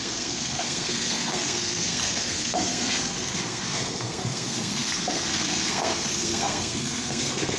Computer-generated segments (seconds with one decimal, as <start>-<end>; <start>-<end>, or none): 0.0-7.6